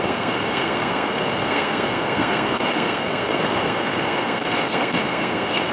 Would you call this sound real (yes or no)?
no